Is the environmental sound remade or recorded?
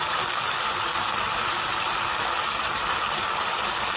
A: recorded